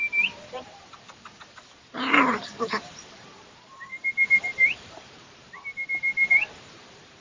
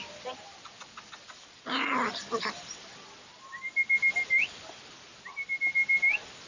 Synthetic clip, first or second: first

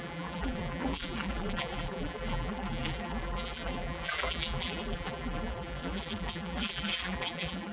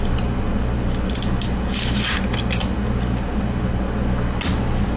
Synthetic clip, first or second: first